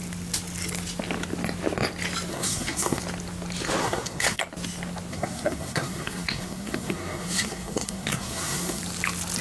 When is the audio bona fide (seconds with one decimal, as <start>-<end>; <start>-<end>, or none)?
0.0-2.3; 3.0-3.8; 4.4-5.1; 8.8-9.4